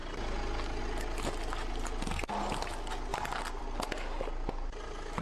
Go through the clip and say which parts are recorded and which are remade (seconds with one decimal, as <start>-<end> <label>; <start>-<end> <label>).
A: 0.0-5.2 recorded